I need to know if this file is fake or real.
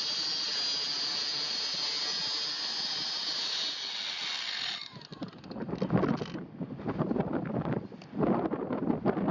real